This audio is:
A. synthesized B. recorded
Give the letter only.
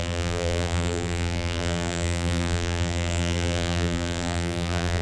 A